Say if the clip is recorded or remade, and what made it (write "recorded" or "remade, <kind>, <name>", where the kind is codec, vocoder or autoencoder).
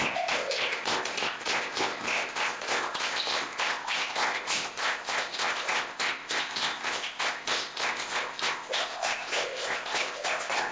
remade, codec, ZipCodec